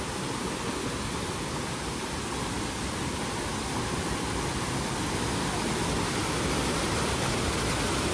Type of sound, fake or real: real